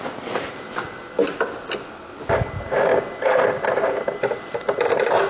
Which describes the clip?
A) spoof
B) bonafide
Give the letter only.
B